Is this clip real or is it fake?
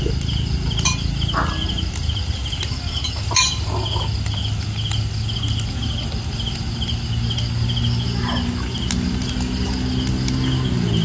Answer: real